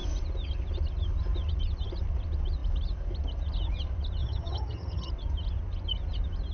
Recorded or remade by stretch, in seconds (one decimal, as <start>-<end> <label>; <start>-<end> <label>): 0.0-4.2 recorded; 4.2-5.1 remade; 5.1-6.5 recorded